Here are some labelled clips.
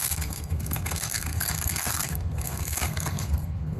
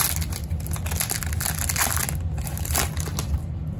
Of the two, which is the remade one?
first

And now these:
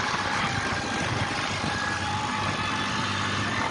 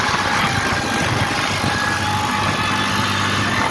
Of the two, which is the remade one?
first